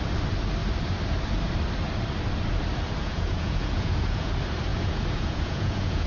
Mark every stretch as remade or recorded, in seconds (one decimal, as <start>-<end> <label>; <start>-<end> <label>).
0.0-3.0 recorded; 3.0-4.3 remade; 4.3-4.7 recorded; 4.7-6.1 remade